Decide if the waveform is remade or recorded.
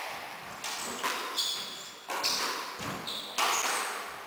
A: recorded